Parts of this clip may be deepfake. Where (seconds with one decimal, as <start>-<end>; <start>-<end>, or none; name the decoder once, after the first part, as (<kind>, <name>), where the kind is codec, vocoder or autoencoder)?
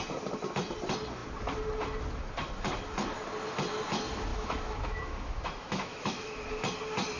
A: 4.3-6.5 (autoencoder, DAC-VAE)